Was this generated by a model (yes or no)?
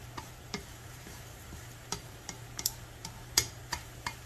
yes